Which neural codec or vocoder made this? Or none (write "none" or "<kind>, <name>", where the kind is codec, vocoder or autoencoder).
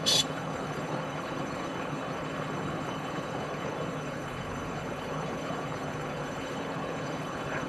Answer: codec, HILCodec